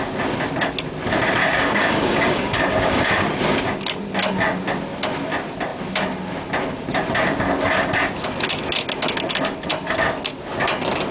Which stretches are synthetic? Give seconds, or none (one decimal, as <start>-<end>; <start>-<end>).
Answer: 1.4-3.1